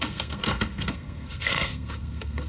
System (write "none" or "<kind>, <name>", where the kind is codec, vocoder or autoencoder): codec, SNAC